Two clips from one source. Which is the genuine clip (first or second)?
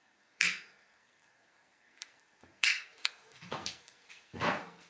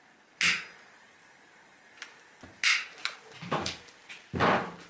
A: second